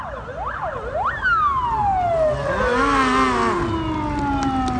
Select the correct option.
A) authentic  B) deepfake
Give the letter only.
A